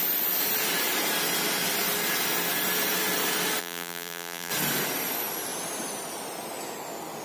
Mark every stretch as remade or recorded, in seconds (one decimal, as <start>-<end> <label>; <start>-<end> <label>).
0.0-3.6 recorded; 3.6-4.5 remade; 4.5-7.2 recorded